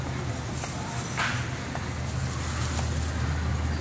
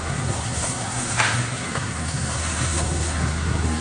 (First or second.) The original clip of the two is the first